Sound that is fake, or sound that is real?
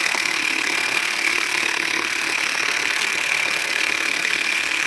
fake